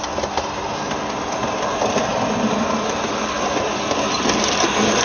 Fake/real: real